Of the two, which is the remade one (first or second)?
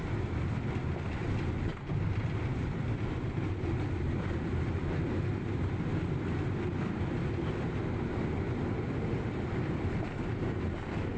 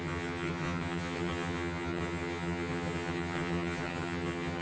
second